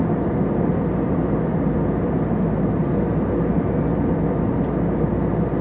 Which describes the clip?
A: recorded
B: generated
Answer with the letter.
A